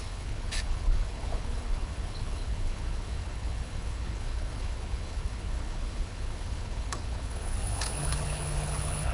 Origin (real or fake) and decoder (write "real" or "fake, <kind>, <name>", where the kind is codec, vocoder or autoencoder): fake, codec, HILCodec